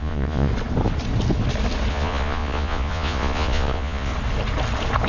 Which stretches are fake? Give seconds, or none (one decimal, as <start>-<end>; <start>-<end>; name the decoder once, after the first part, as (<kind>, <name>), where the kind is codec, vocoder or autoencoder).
0.0-0.5 (vocoder, Vocos); 1.9-4.1